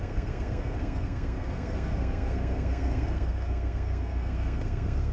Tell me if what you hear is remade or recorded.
remade